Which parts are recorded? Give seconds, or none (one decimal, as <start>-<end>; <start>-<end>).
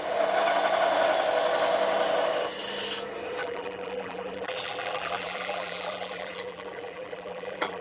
0.0-3.4